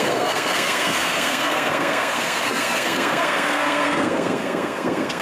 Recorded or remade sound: remade